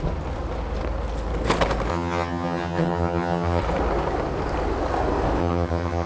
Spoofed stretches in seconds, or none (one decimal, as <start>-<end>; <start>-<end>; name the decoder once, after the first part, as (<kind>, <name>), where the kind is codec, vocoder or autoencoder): 1.9-3.6 (vocoder, HiFi-GAN); 5.4-6.1